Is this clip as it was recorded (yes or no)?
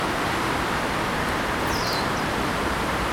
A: no